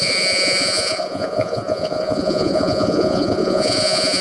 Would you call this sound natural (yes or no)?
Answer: no